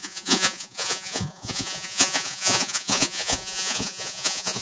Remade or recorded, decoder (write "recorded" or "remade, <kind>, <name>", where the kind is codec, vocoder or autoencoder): remade, vocoder, Vocos